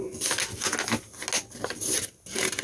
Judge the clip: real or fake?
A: real